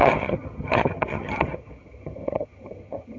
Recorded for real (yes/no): no